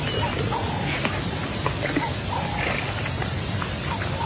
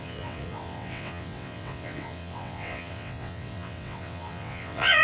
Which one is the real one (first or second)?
first